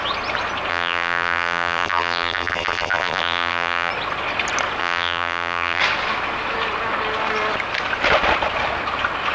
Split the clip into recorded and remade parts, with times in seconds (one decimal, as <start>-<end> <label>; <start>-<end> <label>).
0.0-0.7 recorded; 0.7-3.9 remade; 3.9-4.8 recorded; 4.8-5.8 remade; 5.8-9.3 recorded